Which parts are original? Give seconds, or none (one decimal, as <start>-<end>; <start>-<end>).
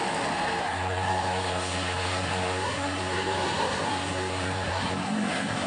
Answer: 0.0-0.6